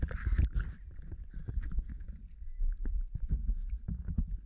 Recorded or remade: recorded